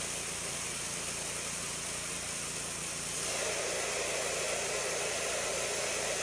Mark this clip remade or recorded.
recorded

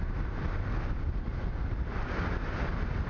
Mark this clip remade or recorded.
recorded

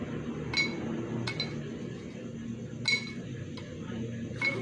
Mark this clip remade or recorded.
recorded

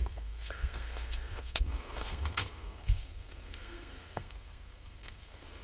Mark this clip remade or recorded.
remade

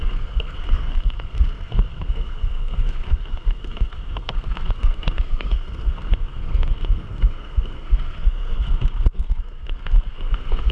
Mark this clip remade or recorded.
remade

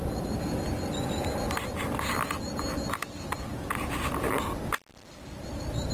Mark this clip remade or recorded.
recorded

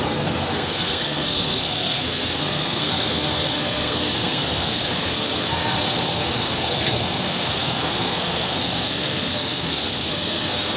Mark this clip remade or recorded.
remade